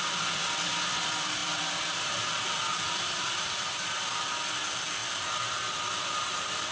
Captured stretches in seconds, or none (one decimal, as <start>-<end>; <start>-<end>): 0.0-1.4; 2.2-2.7; 3.7-6.7